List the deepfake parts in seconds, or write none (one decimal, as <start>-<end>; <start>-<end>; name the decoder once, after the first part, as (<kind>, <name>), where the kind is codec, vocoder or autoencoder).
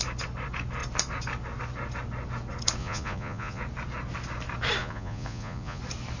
2.8-3.6 (vocoder, Vocos); 4.8-5.8